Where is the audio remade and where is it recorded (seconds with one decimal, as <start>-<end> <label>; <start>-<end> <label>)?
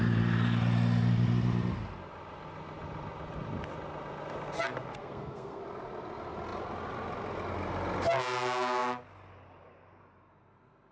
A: 0.0-4.9 recorded; 4.9-5.6 remade; 5.6-10.9 recorded